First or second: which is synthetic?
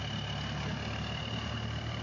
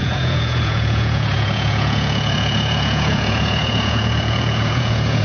second